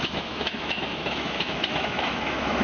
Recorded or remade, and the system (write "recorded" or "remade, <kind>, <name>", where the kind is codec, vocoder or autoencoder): remade, autoencoder, DAC-VAE